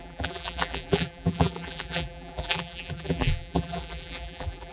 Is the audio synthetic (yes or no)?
yes